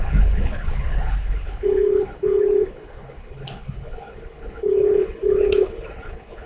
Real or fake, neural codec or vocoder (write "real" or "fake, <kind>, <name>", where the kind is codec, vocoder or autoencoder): fake, codec, HILCodec